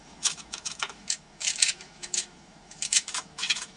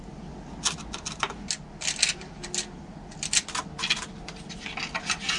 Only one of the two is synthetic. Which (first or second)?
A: first